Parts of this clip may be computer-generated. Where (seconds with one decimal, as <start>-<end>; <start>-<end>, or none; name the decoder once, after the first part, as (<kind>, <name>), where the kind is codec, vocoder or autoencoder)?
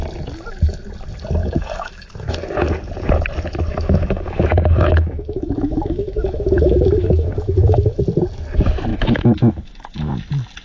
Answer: 1.4-2.3 (autoencoder, DAC-VAE); 3.7-8.0; 8.9-10.1